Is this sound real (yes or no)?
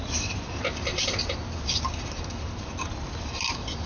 yes